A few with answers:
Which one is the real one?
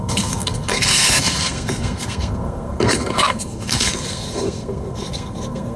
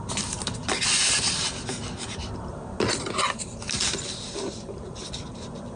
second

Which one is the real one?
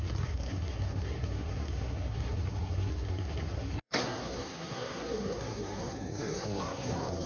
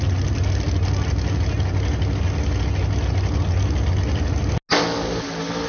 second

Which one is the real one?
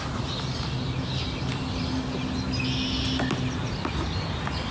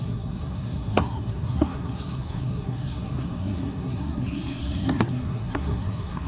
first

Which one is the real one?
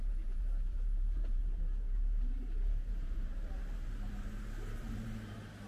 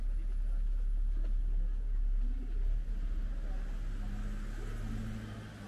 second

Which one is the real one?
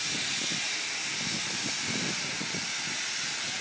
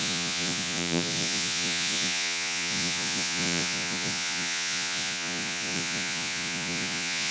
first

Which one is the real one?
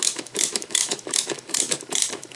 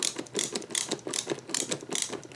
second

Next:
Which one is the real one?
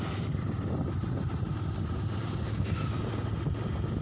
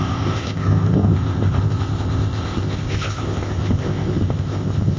first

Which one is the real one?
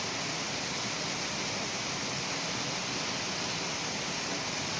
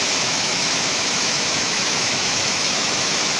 first